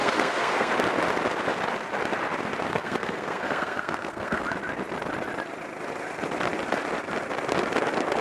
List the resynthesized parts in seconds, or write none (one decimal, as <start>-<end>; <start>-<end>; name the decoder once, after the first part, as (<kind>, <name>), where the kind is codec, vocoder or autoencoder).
0.0-0.7 (codec, SNAC); 2.7-4.4